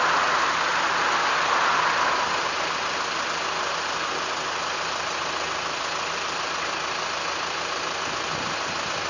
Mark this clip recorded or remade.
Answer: recorded